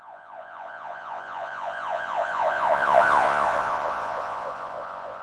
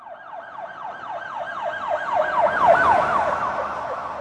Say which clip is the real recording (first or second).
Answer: second